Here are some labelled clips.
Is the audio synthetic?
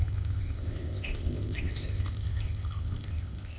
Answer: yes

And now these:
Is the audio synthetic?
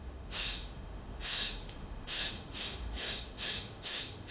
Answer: yes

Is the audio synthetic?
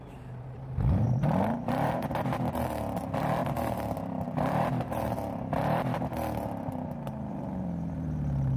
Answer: yes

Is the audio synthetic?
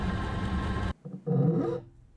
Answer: no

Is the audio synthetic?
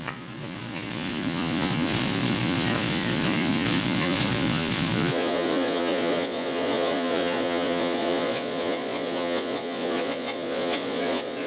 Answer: yes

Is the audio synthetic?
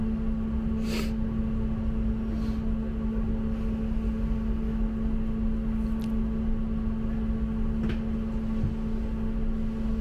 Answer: no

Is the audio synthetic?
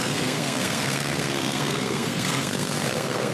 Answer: yes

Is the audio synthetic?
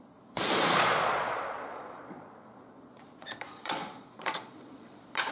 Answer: yes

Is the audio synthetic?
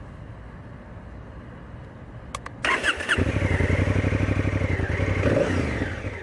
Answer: no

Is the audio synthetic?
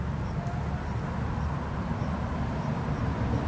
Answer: no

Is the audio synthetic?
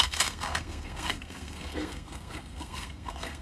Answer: yes